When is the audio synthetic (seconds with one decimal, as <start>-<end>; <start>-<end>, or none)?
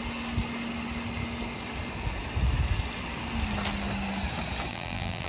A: 4.7-5.3